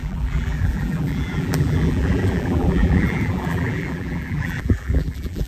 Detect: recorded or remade remade